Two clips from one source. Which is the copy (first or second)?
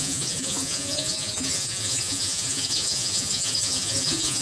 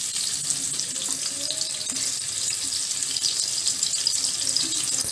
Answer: first